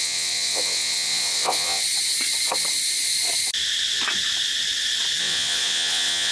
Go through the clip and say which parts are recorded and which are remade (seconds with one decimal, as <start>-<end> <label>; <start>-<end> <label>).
0.0-1.8 remade; 1.8-5.2 recorded; 5.2-6.3 remade